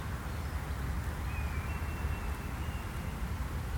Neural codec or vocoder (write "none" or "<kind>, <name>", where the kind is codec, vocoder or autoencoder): none